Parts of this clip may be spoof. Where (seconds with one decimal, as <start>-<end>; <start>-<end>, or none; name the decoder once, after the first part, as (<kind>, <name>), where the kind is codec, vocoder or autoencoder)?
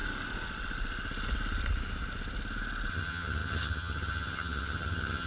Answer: 2.9-5.3 (vocoder, HiFi-GAN)